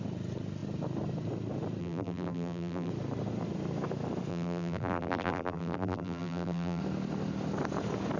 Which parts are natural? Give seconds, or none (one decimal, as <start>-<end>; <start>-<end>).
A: 0.0-1.8; 2.9-4.3; 6.8-8.2